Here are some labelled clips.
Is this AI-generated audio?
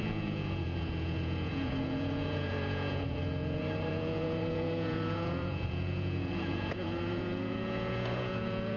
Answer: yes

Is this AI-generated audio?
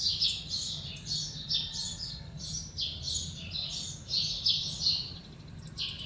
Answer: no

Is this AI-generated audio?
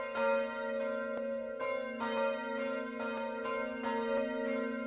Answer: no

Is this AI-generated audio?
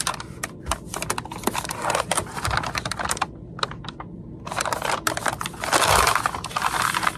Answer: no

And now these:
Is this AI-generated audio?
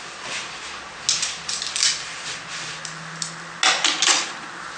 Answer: no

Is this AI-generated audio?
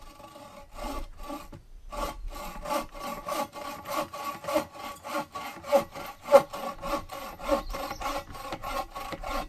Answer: no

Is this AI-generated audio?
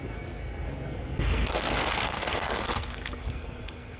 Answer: yes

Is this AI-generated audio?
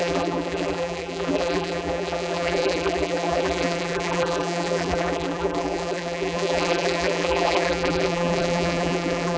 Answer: yes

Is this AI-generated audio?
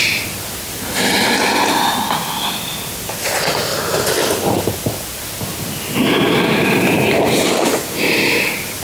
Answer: no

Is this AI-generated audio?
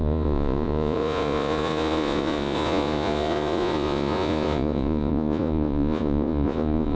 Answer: yes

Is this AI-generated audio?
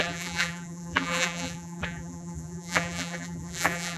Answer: yes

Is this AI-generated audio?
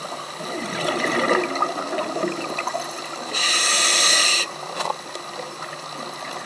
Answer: no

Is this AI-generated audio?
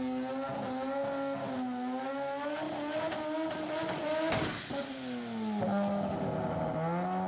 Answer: no